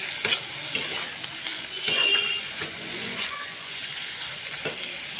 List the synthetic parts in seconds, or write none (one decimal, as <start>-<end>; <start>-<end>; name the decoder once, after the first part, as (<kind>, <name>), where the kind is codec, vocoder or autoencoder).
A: 1.5-4.6 (vocoder, Vocos)